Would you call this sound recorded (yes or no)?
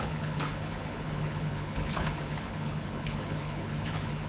no